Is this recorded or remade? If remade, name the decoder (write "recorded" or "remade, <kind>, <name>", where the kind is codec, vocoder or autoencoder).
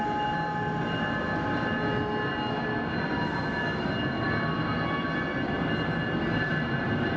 recorded